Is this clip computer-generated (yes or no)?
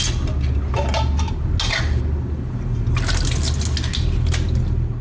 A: no